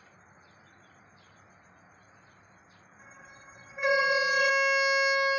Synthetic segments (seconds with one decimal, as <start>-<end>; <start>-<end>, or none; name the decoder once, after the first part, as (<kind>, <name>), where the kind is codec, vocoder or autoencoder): 3.0-4.5 (vocoder, WaveNeXt)